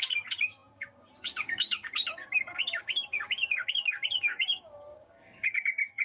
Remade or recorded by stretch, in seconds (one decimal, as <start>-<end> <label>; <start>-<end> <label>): 0.0-6.0 remade